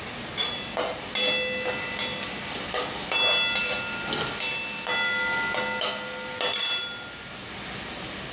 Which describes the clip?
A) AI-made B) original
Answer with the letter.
B